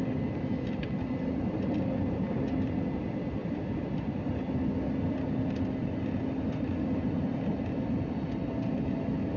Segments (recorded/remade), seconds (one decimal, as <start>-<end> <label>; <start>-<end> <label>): 0.0-9.4 recorded